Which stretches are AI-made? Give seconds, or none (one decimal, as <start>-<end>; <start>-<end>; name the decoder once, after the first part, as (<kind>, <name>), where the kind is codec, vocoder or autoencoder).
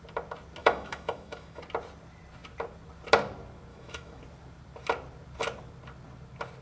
0.6-1.6 (autoencoder, DAC-VAE); 3.7-4.2